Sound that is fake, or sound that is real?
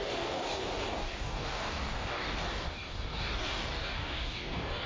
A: fake